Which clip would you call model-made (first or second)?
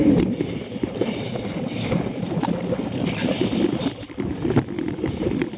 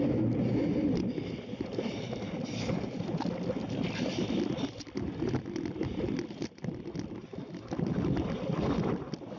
first